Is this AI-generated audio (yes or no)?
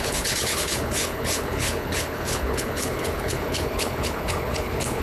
yes